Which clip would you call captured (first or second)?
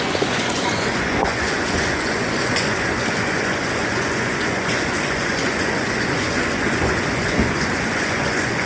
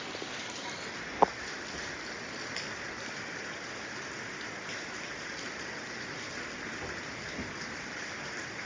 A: second